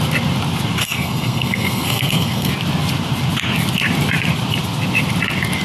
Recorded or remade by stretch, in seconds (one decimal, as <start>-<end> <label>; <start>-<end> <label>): 0.0-0.8 recorded; 0.8-2.5 remade; 2.5-5.6 recorded